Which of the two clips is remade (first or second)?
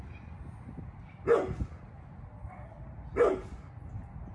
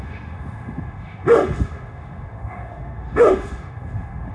second